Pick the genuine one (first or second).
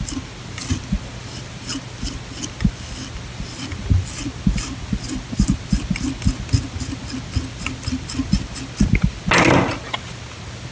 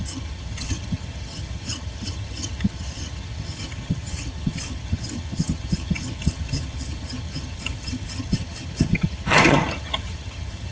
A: first